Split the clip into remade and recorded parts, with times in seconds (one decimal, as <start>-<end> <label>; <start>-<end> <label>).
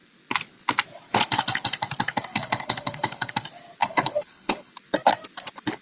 0.0-2.3 recorded; 2.3-3.3 remade; 3.3-3.8 recorded; 3.8-4.7 remade; 4.7-5.8 recorded